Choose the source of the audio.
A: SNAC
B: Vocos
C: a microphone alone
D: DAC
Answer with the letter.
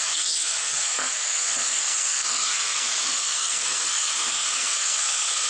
A